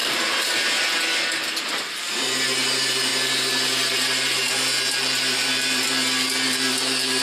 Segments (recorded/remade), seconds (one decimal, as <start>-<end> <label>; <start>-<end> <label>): 0.0-3.1 remade; 3.1-4.5 recorded; 4.5-7.2 remade